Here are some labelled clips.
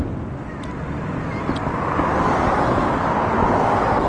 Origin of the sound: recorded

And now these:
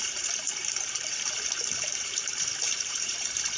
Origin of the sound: remade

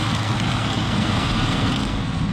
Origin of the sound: remade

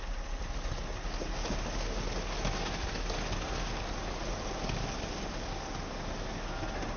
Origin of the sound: recorded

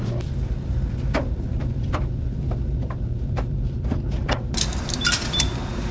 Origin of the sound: remade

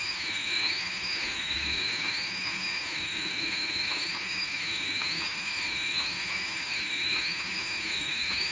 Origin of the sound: remade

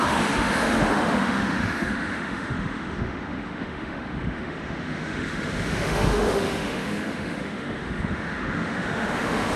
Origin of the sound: remade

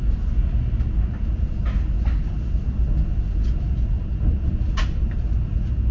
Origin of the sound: recorded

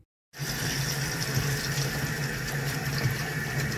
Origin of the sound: recorded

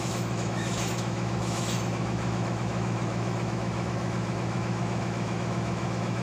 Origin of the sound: remade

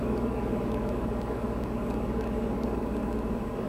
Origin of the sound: remade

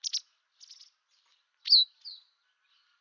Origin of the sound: recorded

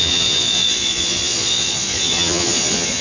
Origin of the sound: remade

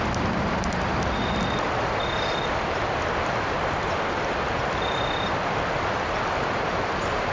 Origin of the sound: remade